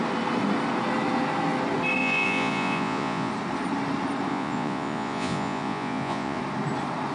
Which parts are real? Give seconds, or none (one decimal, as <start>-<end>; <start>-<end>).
0.0-2.0; 3.3-4.3; 6.4-7.1